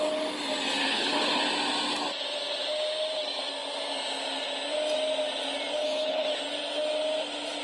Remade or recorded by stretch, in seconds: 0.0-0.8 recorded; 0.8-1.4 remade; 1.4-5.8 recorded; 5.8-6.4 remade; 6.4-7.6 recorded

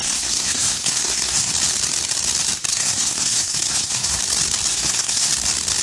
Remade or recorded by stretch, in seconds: 0.0-1.5 remade; 1.5-2.7 recorded; 2.7-4.2 remade; 4.2-4.7 recorded; 4.7-5.3 remade; 5.3-5.8 recorded

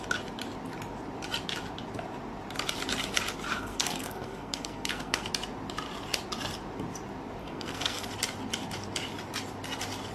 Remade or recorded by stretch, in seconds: 0.0-3.5 recorded; 3.5-5.3 remade; 5.3-7.4 recorded; 7.4-8.1 remade; 8.1-10.1 recorded

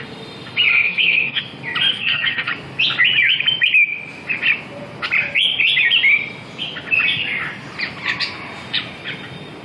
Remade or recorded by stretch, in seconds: 0.0-0.7 recorded; 0.7-1.4 remade; 1.4-1.9 recorded; 1.9-2.5 remade; 2.5-9.6 recorded

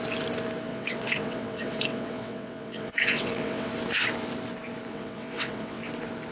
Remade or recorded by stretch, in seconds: 0.0-0.7 recorded; 0.7-3.7 remade; 3.7-4.9 recorded; 4.9-5.8 remade; 5.8-6.3 recorded

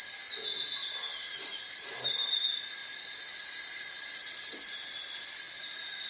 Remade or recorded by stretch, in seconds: 0.0-1.1 recorded; 1.1-2.0 remade; 2.0-2.8 recorded; 2.8-5.1 remade; 5.1-6.1 recorded

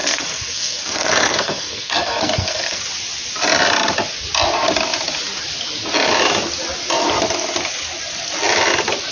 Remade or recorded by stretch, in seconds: 0.0-2.8 remade; 2.8-9.1 recorded